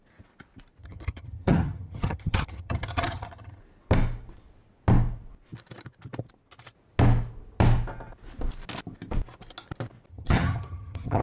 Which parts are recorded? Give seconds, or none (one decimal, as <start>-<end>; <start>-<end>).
0.0-0.8; 3.6-10.1